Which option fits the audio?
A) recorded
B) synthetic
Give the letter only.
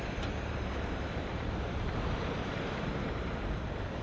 B